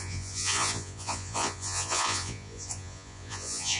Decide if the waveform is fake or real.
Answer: fake